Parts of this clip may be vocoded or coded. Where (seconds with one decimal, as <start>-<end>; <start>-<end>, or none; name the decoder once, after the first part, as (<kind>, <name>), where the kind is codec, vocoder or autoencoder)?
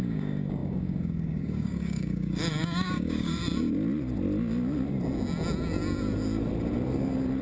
0.0-3.4 (codec, DAC)